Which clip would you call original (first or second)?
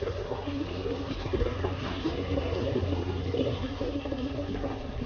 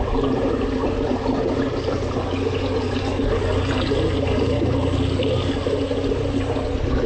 second